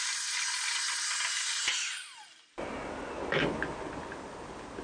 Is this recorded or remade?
recorded